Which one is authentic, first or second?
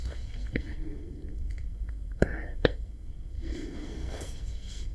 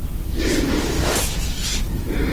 second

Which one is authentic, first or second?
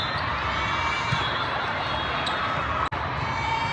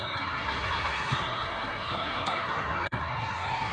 first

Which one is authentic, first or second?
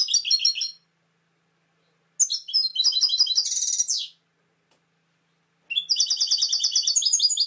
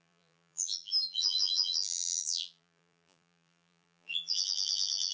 first